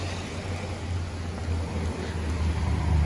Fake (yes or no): no